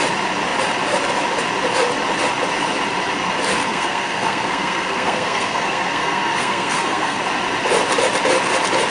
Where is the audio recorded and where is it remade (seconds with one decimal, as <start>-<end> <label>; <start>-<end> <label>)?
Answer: 0.0-3.5 recorded; 3.5-7.2 remade; 7.2-8.9 recorded